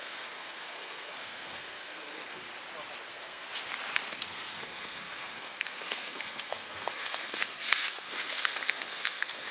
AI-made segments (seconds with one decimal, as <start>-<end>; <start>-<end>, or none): 0.0-2.4; 3.1-3.5; 4.1-9.5

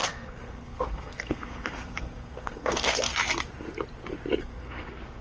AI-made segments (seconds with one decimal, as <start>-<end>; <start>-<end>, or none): 0.0-3.1; 4.4-5.2

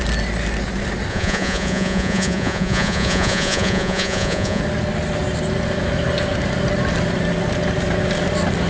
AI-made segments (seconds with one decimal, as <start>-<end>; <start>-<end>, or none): 1.1-4.6

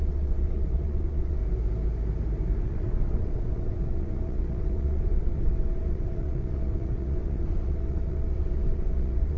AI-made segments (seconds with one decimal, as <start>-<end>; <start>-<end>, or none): 0.0-1.4; 2.6-9.4

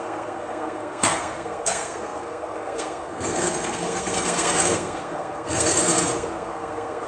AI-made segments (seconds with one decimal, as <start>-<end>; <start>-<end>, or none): 0.0-7.1

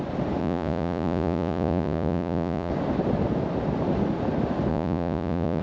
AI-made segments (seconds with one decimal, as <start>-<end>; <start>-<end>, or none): 0.4-2.7; 4.7-5.6

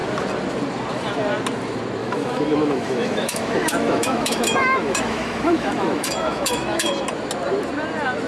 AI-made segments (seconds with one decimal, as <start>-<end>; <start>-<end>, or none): 2.0-6.9